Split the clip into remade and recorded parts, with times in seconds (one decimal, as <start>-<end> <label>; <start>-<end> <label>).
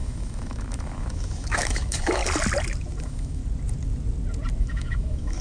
0.0-2.2 remade; 2.2-3.0 recorded; 3.0-3.4 remade; 3.4-4.6 recorded; 4.6-5.4 remade